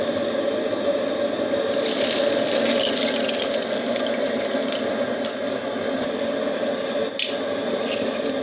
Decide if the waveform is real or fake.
real